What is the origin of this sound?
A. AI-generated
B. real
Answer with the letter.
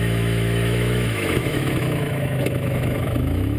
A